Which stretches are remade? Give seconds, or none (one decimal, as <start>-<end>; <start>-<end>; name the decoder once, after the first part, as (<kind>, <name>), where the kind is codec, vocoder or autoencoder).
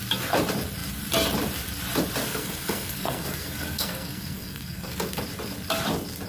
2.2-5.2 (codec, SNAC)